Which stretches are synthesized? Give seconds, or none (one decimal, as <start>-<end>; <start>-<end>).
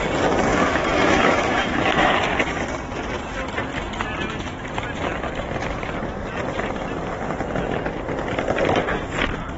0.5-2.1